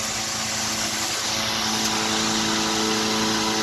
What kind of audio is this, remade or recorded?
recorded